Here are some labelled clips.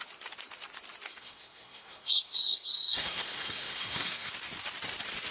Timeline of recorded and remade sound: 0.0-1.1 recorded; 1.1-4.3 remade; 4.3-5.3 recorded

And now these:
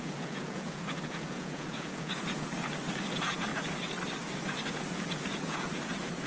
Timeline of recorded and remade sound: 0.0-2.5 remade; 2.5-3.1 recorded; 3.1-3.5 remade; 3.5-4.7 recorded; 4.7-6.3 remade

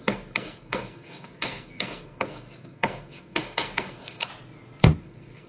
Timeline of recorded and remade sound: 0.0-4.3 remade; 4.3-5.0 recorded; 5.0-5.5 remade

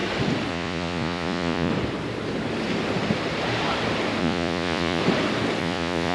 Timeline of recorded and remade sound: 0.0-0.5 recorded; 0.5-1.7 remade; 1.7-4.2 recorded; 4.2-5.0 remade; 5.0-5.6 recorded; 5.6-6.1 remade

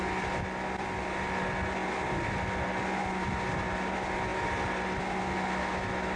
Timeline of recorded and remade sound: 0.0-6.2 recorded

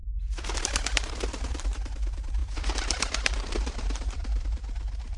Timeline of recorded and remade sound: 0.0-0.6 recorded; 0.6-5.2 remade

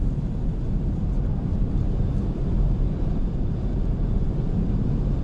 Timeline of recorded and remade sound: 0.0-5.2 recorded

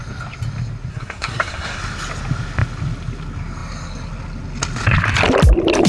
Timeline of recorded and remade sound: 0.0-0.9 recorded; 0.9-1.8 remade; 1.8-5.9 recorded